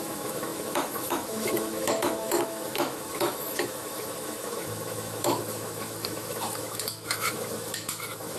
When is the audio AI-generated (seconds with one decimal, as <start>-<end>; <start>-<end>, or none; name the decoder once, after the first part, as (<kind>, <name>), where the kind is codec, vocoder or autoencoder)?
0.0-8.4 (autoencoder, DAC-VAE)